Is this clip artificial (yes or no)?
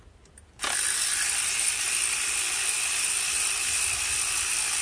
no